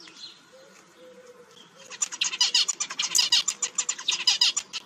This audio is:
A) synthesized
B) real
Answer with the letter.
B